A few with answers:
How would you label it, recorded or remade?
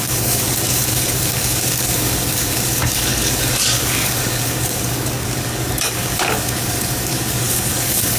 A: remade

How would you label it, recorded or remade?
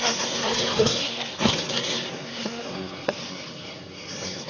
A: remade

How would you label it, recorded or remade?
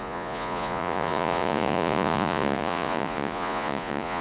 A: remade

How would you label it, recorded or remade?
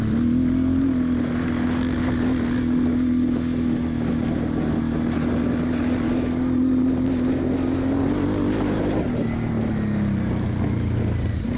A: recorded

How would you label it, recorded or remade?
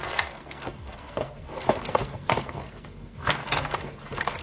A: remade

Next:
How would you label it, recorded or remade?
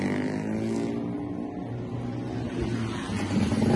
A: recorded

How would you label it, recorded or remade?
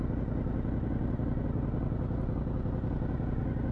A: recorded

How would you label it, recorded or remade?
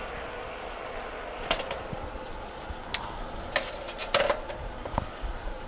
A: recorded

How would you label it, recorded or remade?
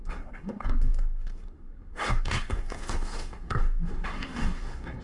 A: remade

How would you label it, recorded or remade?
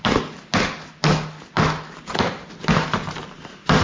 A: recorded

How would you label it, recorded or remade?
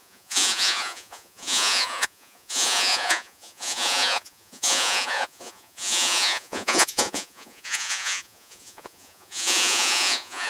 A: remade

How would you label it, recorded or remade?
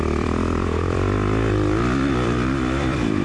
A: remade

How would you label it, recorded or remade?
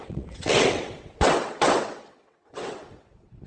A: remade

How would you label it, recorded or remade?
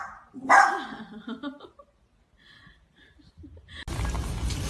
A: recorded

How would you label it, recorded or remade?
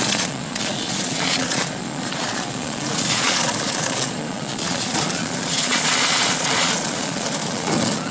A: remade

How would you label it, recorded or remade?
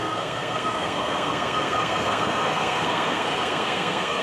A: remade